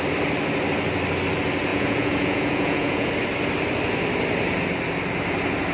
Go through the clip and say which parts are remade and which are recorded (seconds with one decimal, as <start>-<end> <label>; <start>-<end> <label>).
0.0-1.7 recorded; 1.7-3.1 remade; 3.1-5.7 recorded